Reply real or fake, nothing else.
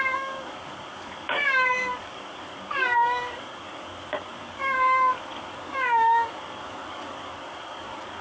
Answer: fake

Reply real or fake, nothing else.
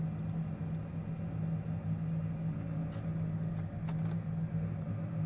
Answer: real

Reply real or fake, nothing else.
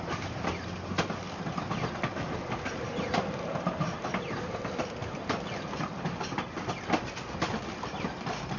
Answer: real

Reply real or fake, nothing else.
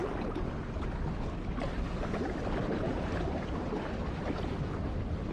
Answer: real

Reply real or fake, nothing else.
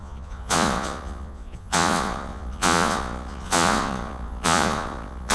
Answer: fake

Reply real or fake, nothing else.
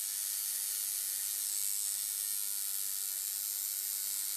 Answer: real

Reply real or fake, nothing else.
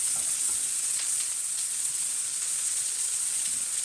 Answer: fake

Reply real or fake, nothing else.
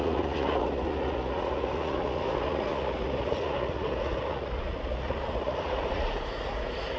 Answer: fake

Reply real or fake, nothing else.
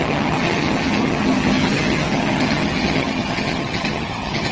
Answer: fake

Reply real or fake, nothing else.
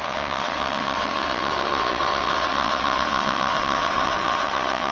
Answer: fake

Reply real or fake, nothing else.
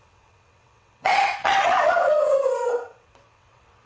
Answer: fake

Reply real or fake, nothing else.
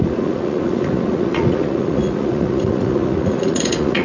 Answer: fake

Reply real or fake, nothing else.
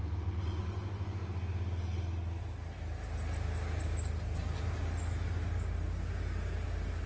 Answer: real